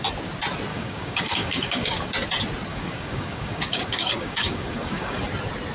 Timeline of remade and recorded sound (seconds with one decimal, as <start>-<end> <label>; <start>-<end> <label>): 0.0-0.7 recorded; 0.7-2.1 remade; 2.1-2.7 recorded; 2.7-5.2 remade; 5.2-5.7 recorded